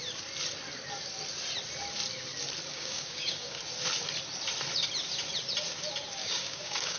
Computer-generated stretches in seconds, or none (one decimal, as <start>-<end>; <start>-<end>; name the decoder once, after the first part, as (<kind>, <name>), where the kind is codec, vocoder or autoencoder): 2.7-3.6 (codec, DAC); 6.2-7.0